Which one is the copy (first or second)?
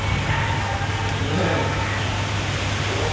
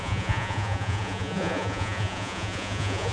second